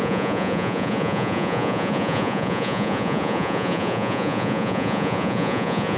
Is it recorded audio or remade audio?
remade